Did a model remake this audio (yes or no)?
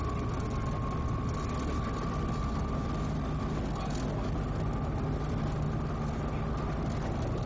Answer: no